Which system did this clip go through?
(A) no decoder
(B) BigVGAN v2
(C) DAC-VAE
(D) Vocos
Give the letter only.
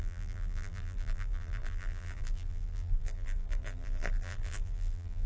B